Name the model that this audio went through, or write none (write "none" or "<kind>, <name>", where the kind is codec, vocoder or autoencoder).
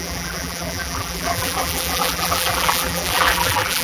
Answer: vocoder, BigVGAN v2